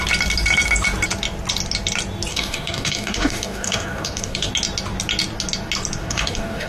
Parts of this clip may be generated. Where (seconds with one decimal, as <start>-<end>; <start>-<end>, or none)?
2.3-4.5; 6.0-6.7

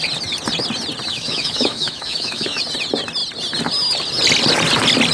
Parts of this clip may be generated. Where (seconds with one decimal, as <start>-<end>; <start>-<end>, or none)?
1.1-2.6

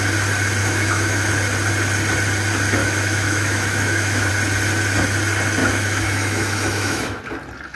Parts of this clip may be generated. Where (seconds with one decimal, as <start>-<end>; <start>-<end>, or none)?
0.6-1.3; 2.8-4.3; 5.6-7.2

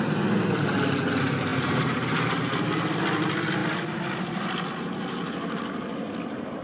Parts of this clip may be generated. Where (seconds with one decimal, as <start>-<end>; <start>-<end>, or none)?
none

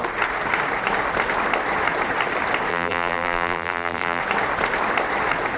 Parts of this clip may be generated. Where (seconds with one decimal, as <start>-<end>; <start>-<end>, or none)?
2.7-4.2

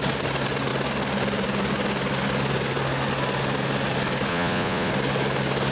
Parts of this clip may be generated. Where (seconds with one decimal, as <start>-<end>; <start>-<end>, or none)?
4.3-4.9